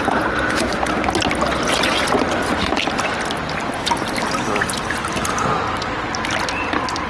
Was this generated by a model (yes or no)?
no